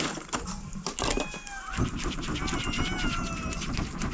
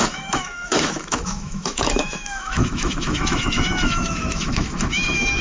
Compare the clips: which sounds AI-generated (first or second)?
second